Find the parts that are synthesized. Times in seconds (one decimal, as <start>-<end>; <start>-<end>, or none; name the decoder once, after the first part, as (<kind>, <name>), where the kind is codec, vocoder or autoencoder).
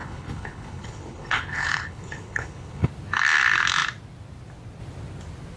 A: 0.0-2.9 (codec, HILCodec)